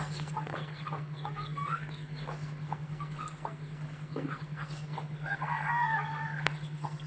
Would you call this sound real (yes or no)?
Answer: no